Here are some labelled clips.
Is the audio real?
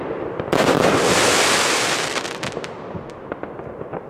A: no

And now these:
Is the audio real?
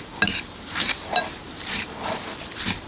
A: yes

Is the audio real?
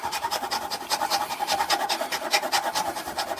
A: no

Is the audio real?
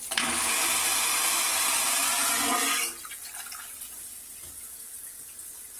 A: yes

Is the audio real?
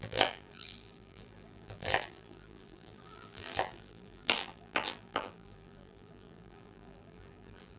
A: no